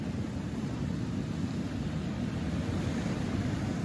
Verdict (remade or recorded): recorded